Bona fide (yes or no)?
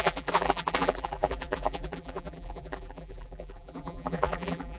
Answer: no